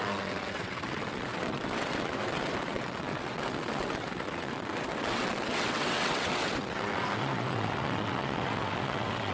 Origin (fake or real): fake